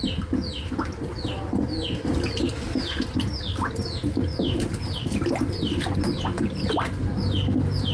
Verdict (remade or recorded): recorded